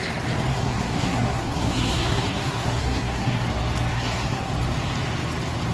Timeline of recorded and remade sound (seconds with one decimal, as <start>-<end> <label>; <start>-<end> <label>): 0.0-0.5 recorded; 0.5-3.4 remade; 3.4-3.9 recorded; 3.9-4.5 remade; 4.5-5.7 recorded